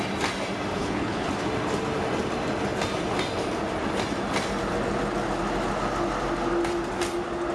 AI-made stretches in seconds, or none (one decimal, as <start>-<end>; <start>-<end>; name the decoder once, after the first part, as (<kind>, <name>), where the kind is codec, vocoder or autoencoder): 0.8-1.3 (codec, HILCodec)